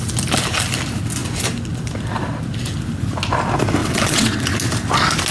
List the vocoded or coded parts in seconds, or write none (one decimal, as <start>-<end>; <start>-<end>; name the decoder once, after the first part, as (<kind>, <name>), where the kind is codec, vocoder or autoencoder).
3.8-4.4 (vocoder, WaveNeXt)